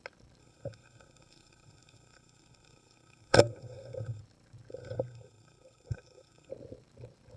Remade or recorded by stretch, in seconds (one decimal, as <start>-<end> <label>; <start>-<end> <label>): 0.0-0.4 recorded; 0.4-4.2 remade; 4.2-4.7 recorded; 4.7-6.5 remade; 6.5-7.4 recorded

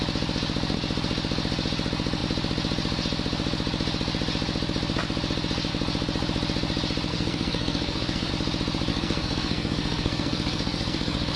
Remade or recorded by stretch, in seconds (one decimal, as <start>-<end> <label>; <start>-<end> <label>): 0.0-7.1 recorded; 7.1-8.3 remade; 8.3-8.9 recorded; 8.9-11.4 remade